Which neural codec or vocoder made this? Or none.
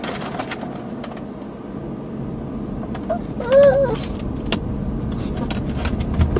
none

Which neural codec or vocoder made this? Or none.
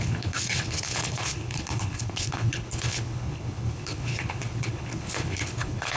codec, HILCodec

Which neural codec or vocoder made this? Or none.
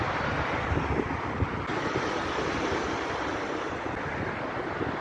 none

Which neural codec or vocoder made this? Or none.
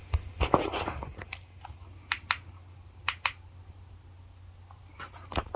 none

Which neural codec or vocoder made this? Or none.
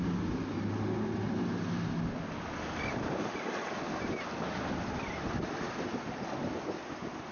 none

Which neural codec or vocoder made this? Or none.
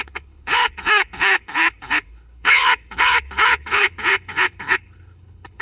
codec, HILCodec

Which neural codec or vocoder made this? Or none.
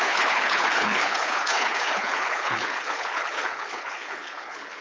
codec, HILCodec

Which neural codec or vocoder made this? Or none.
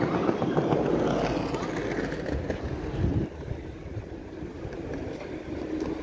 none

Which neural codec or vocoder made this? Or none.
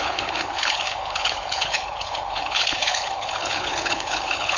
codec, HILCodec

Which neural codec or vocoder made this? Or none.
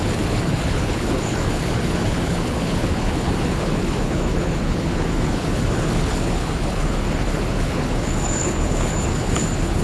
codec, HILCodec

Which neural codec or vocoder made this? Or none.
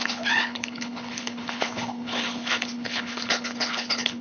codec, HILCodec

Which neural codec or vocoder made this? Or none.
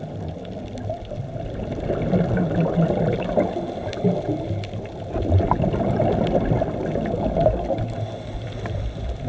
none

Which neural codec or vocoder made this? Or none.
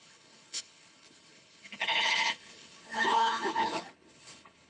codec, HILCodec